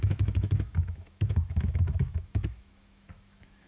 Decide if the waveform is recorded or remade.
remade